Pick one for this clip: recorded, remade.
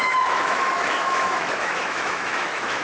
remade